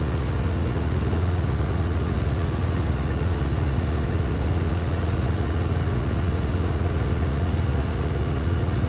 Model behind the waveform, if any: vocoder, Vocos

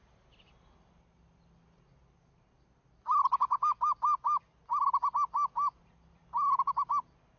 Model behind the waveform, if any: none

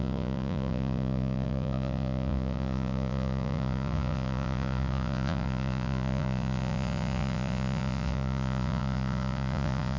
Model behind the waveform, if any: vocoder, Vocos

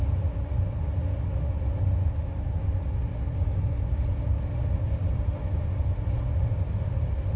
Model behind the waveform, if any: none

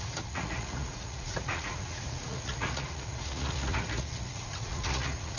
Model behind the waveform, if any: vocoder, Vocos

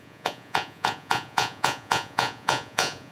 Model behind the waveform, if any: vocoder, Vocos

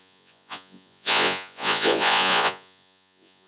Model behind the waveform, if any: vocoder, Vocos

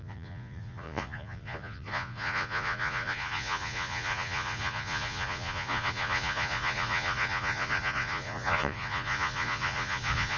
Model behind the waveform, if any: vocoder, Vocos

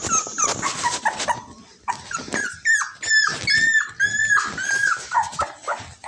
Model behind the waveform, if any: none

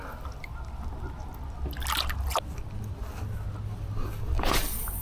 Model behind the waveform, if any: none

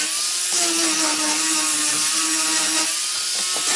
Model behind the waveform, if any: none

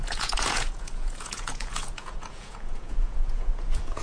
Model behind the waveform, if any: vocoder, Vocos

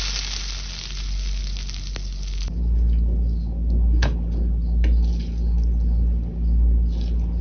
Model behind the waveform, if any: none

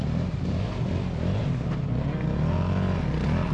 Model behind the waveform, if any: none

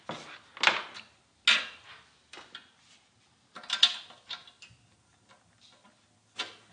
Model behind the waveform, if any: none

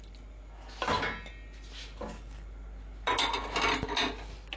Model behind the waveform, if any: none